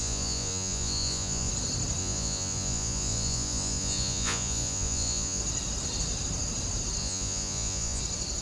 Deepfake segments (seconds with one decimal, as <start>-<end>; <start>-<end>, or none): 0.0-1.5; 2.0-5.4; 7.0-8.0